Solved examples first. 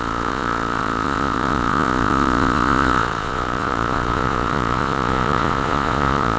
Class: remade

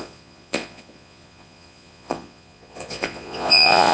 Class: remade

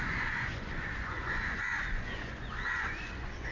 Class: remade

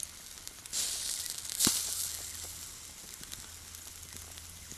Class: recorded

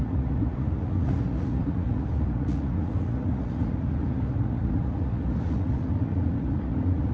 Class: remade